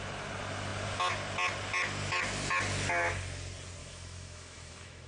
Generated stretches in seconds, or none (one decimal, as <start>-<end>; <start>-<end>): 3.8-5.1